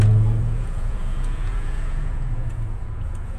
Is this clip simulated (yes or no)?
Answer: yes